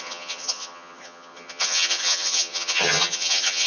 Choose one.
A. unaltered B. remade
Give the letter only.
B